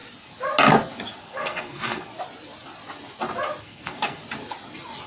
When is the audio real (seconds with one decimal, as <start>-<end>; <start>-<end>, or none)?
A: 0.0-1.2; 2.1-3.6; 4.2-5.1